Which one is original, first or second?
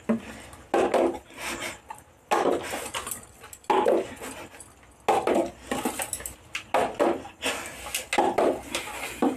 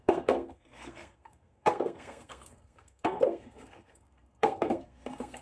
first